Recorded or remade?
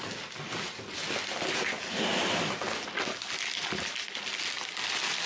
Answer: recorded